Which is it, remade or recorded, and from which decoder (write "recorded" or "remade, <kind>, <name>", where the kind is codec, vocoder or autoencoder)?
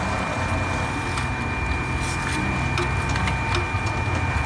recorded